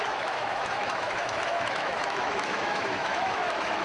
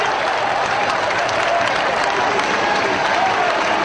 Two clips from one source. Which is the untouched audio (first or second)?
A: second